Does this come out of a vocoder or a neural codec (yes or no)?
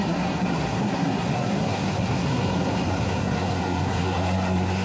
yes